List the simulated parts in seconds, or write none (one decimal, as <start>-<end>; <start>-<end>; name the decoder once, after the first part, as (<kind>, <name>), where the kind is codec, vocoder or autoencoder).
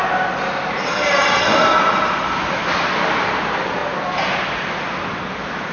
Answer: none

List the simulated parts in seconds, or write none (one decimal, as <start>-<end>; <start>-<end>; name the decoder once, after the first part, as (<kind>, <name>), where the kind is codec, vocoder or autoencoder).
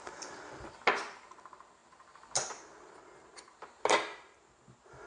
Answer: none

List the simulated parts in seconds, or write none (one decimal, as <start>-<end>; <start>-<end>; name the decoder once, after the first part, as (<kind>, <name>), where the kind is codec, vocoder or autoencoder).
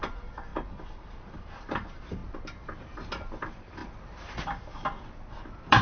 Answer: 0.0-0.5 (vocoder, BigVGAN v2); 1.1-2.2; 3.0-3.8; 4.4-5.8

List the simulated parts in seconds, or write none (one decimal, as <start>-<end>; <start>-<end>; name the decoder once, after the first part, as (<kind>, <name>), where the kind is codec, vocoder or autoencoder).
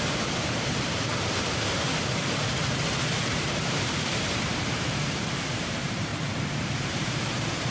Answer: 0.0-6.1 (vocoder, BigVGAN v2); 6.6-7.7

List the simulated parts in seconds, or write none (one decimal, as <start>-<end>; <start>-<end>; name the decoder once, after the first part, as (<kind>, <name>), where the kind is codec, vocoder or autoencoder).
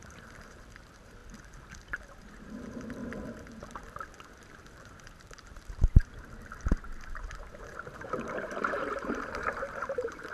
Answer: 0.0-1.2 (vocoder, BigVGAN v2); 2.2-3.0; 4.5-6.0; 7.5-10.3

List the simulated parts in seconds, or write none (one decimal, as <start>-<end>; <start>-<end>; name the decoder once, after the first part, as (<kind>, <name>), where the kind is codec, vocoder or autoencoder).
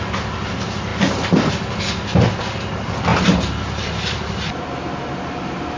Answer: 3.1-4.7 (vocoder, BigVGAN v2)